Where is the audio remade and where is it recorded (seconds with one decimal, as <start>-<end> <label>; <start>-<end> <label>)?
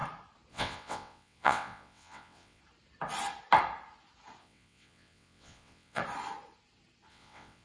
0.0-0.5 recorded; 0.5-2.6 remade; 2.6-4.4 recorded; 4.4-6.0 remade; 6.0-7.1 recorded; 7.1-7.6 remade